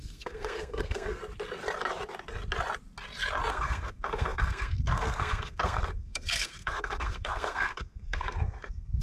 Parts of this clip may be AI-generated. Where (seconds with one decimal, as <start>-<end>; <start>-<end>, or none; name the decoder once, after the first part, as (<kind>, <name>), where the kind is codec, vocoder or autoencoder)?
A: 0.0-1.2 (codec, SNAC); 3.5-9.0